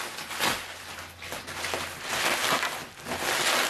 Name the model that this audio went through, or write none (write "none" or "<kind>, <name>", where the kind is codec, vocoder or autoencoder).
none